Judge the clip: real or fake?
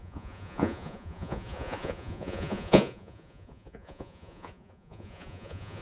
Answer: fake